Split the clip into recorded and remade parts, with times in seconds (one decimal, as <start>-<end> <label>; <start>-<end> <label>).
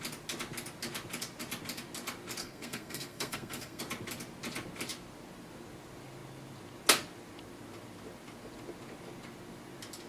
0.0-2.4 recorded; 2.4-3.8 remade; 3.8-10.1 recorded